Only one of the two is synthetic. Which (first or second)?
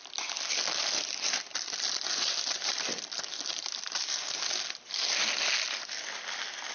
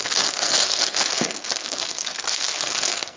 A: second